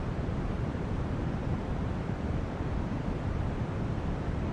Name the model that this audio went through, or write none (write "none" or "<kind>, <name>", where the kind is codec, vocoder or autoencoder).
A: vocoder, BigVGAN v2